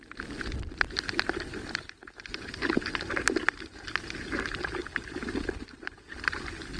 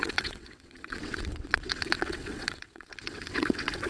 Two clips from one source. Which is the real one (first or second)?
first